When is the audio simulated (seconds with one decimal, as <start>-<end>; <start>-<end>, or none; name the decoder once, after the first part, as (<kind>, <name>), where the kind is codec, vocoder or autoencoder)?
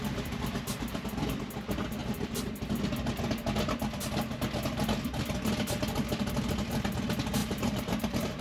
2.0-2.6 (vocoder, BigVGAN v2); 7.4-8.4